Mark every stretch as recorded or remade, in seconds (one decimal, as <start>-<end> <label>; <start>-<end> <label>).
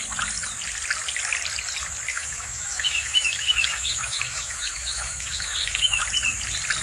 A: 0.0-2.1 recorded; 2.1-6.0 remade; 6.0-6.8 recorded